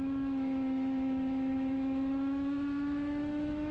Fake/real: fake